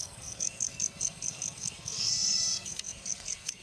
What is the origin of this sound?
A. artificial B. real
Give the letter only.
A